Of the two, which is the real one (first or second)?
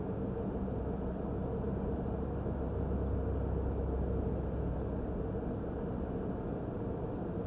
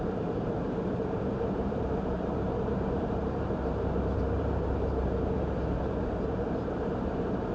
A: first